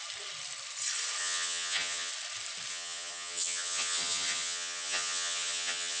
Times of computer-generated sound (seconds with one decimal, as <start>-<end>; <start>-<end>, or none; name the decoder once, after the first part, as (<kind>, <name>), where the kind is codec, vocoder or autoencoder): 1.2-2.1 (vocoder, HiFi-GAN); 2.7-6.0